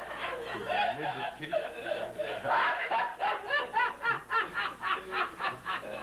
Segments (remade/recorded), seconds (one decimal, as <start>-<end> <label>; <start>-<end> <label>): 0.0-3.1 remade; 3.1-4.5 recorded; 4.5-6.0 remade